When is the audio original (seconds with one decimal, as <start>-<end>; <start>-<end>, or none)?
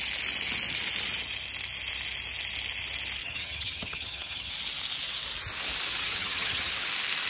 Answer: 0.0-3.2; 4.5-5.9; 6.8-7.3